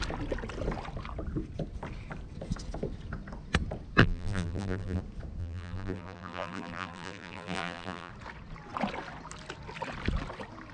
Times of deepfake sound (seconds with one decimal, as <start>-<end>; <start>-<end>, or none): 4.0-5.0; 5.4-8.1